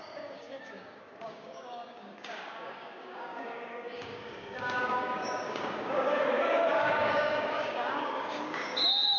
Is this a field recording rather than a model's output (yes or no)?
no